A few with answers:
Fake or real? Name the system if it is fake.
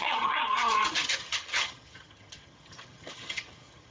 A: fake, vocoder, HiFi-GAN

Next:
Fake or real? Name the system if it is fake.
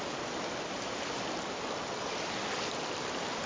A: real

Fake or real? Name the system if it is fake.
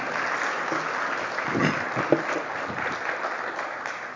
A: real